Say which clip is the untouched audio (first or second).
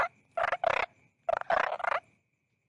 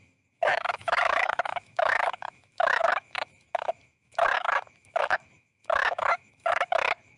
first